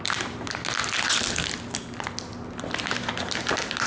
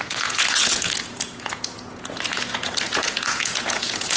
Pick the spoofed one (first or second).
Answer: second